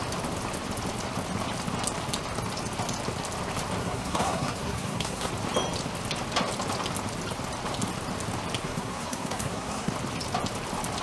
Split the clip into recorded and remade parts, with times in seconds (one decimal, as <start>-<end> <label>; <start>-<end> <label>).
0.0-3.8 recorded; 3.8-5.3 remade; 5.3-8.6 recorded; 8.6-9.9 remade; 9.9-11.0 recorded